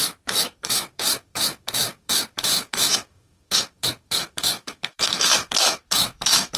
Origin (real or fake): fake